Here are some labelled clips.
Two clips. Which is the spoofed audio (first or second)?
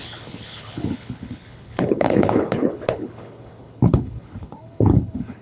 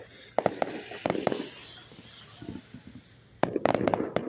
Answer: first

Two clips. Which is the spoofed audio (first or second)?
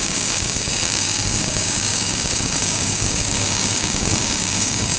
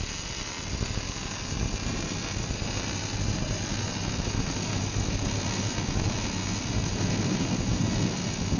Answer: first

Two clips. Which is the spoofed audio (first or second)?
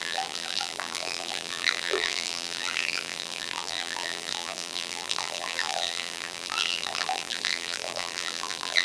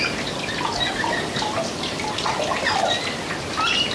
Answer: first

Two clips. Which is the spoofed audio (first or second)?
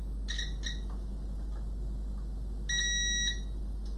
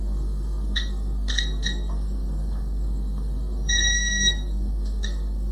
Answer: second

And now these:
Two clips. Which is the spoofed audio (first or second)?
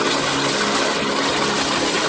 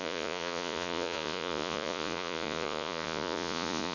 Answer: second